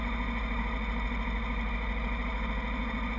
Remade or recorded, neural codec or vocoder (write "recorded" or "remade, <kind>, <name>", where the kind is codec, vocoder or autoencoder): recorded